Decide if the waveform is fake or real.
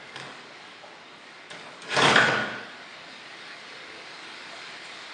fake